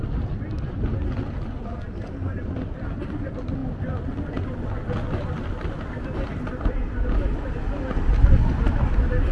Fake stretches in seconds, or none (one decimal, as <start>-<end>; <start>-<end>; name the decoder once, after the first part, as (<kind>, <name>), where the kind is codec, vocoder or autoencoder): none